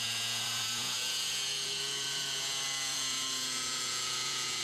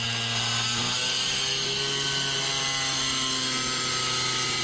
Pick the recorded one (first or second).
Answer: second